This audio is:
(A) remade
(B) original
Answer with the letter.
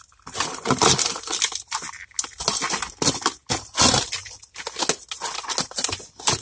B